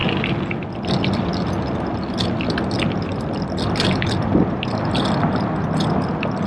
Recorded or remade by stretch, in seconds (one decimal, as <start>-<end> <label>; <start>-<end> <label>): 0.0-6.5 recorded